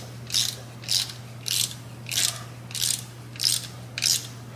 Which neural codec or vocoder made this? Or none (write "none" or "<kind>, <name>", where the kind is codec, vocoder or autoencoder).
none